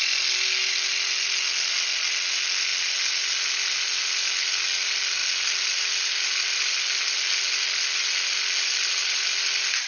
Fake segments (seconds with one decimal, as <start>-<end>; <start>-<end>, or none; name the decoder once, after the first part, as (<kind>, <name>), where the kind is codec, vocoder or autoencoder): none